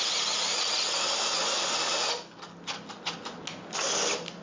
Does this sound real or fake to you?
real